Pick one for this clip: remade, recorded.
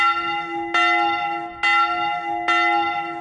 recorded